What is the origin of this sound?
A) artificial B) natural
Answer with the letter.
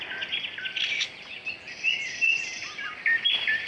B